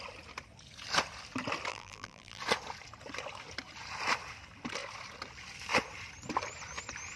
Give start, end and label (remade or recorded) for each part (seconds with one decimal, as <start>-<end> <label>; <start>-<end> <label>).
0.0-1.7 recorded; 1.7-2.4 remade; 2.4-7.2 recorded